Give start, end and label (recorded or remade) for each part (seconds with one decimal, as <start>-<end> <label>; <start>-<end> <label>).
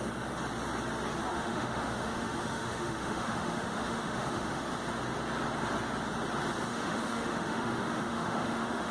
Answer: 0.0-1.3 recorded; 1.3-4.6 remade; 4.6-6.7 recorded; 6.7-8.9 remade